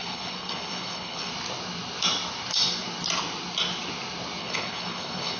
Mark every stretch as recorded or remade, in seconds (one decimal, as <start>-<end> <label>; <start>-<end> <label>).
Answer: 0.0-1.3 remade; 1.3-4.4 recorded; 4.4-5.4 remade